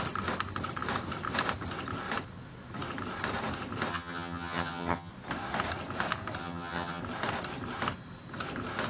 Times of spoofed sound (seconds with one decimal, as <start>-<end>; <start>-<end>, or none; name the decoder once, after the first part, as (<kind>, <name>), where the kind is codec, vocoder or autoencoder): 3.9-5.1 (vocoder, HiFi-GAN); 6.4-7.0